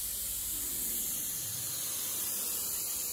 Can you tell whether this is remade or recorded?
recorded